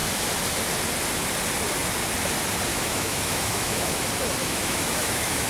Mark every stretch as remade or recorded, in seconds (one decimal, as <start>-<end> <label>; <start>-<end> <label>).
0.0-2.7 recorded; 2.7-4.0 remade; 4.0-4.4 recorded; 4.4-5.5 remade